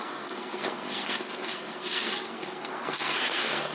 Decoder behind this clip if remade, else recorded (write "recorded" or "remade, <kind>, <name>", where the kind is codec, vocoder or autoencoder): remade, codec, SNAC